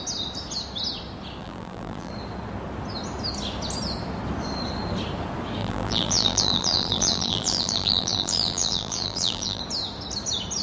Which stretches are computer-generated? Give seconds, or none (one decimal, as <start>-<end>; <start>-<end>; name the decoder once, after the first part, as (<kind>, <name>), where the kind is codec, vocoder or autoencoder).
1.4-2.1 (vocoder, BigVGAN v2); 5.6-9.6